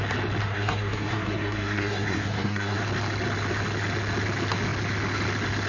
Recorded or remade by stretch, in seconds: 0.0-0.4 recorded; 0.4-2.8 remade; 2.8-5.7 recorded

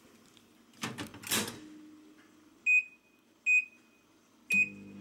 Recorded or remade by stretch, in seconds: 0.0-5.0 recorded

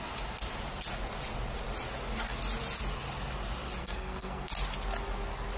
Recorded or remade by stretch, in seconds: 0.0-3.8 recorded; 3.8-4.5 remade; 4.5-5.6 recorded